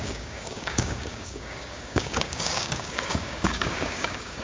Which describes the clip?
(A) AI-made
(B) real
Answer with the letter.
A